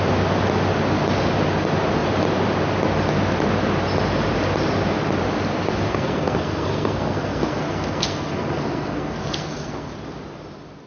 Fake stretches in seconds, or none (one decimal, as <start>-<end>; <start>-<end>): 5.9-9.9